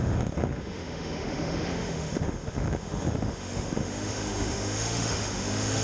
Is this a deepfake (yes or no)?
yes